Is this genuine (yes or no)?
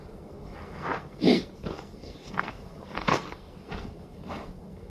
no